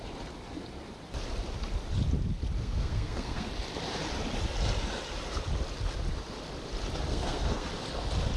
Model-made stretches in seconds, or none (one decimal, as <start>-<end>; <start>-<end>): 2.6-3.5; 7.1-7.7